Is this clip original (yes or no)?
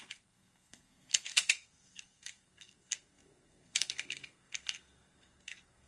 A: no